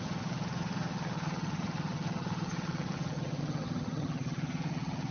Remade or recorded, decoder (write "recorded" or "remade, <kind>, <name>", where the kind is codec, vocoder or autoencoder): remade, vocoder, HiFi-GAN